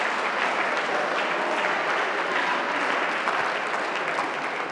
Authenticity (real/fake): real